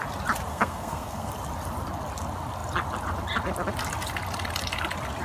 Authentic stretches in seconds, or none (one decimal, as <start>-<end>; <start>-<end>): 0.0-0.5; 1.3-5.2